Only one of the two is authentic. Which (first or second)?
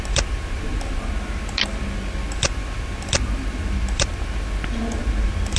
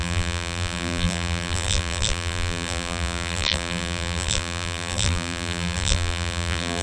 first